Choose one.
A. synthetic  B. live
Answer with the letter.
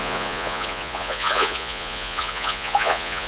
A